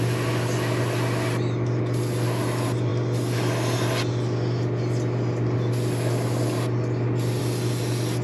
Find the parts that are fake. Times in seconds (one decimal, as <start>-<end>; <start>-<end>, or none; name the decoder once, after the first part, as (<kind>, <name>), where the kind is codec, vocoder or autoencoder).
none